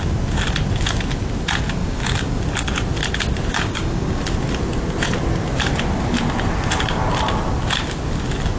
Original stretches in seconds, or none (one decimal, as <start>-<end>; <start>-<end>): 0.0-1.8; 2.4-3.5; 4.2-8.6